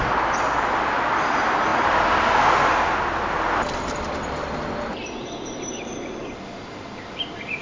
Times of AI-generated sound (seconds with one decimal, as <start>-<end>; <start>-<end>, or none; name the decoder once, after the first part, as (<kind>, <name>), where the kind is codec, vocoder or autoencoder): none